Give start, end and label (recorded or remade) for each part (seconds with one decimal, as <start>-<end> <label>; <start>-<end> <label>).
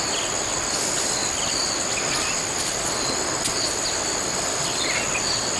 0.0-5.6 recorded